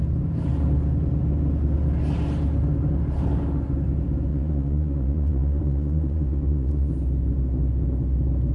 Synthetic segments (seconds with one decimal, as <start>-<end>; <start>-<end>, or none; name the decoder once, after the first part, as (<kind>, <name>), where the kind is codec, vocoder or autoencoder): 4.3-6.9 (vocoder, Vocos)

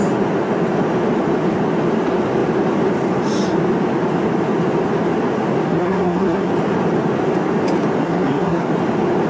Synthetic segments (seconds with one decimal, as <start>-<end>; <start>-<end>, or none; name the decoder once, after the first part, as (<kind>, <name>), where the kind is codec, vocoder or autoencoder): 5.7-6.5 (codec, SNAC); 8.0-8.7

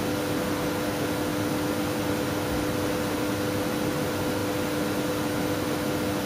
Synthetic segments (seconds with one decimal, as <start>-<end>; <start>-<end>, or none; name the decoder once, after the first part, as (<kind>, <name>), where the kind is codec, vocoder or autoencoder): none

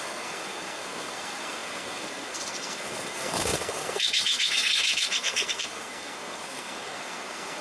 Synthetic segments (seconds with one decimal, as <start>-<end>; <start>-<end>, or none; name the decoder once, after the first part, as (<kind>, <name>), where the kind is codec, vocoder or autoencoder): 0.0-7.6 (codec, SNAC)

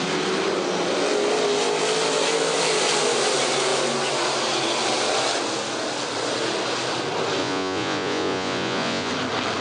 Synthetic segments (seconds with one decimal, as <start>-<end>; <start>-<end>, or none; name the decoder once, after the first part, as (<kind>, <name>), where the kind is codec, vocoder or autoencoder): 7.4-9.1 (vocoder, Vocos)